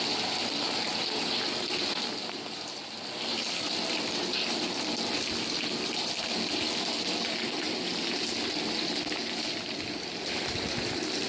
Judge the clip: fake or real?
real